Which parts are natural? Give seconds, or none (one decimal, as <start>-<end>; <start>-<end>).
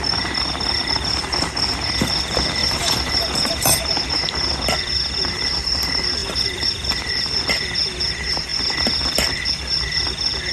0.0-2.6; 3.8-6.2; 6.9-10.5